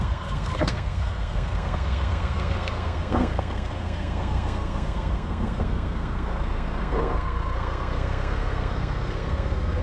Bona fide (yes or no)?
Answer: no